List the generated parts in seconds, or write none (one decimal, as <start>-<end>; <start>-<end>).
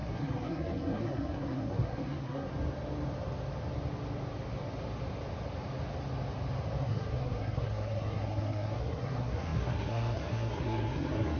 0.0-2.5; 6.8-11.4